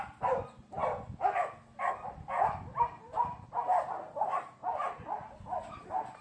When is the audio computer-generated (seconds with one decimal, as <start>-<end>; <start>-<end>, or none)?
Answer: none